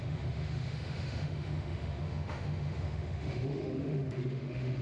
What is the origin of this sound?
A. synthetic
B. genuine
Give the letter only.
A